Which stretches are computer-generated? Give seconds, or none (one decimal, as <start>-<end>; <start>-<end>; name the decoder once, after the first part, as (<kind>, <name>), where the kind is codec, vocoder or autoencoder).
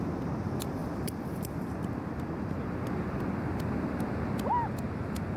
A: 0.8-4.0 (vocoder, BigVGAN v2)